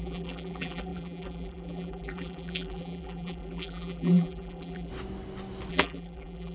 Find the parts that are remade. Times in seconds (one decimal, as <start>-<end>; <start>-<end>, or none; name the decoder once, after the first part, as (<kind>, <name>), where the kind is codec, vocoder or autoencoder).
0.0-4.9 (vocoder, BigVGAN v2); 5.7-6.5